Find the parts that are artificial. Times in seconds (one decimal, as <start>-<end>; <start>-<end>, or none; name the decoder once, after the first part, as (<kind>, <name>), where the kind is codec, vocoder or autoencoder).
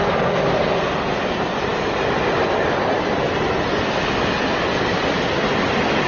none